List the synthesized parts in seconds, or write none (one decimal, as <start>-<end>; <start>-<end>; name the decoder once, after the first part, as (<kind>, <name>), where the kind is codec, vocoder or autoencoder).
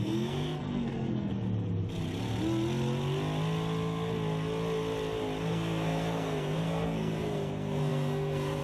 0.0-1.3 (codec, SNAC); 5.5-8.6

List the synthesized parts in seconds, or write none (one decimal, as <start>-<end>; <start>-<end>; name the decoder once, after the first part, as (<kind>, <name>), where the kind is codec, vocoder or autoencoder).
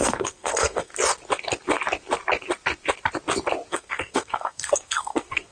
0.0-0.9 (codec, SNAC); 3.7-5.5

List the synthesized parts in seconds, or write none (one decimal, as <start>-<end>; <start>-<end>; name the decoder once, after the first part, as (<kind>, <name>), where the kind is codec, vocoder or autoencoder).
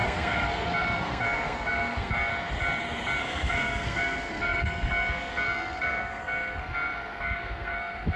0.0-2.3 (codec, SNAC); 3.2-8.2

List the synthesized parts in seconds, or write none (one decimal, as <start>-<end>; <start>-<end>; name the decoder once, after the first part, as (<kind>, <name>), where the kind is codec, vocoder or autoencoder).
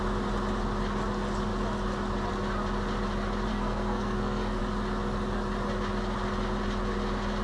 3.5-4.6 (codec, SNAC)